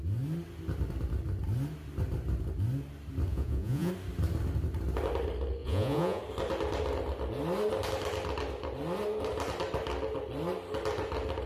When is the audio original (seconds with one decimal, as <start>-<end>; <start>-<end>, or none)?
0.0-3.3; 3.9-5.6; 6.2-11.5